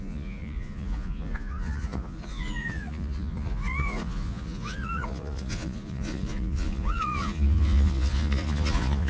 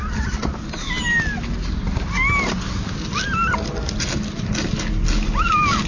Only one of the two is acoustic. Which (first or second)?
second